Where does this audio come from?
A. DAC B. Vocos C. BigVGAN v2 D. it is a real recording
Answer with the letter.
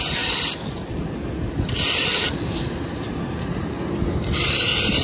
D